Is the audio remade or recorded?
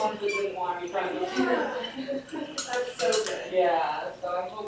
recorded